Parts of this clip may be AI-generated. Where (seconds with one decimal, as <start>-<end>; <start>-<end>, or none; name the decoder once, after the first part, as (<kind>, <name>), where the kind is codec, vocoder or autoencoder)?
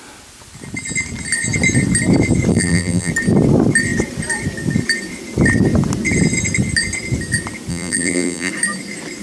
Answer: 2.5-3.1 (vocoder, BigVGAN v2); 7.7-8.5